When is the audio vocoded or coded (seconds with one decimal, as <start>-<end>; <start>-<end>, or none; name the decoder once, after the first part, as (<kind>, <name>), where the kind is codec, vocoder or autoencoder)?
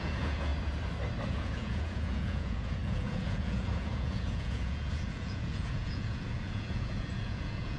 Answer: 0.0-0.5 (vocoder, Vocos); 1.3-7.8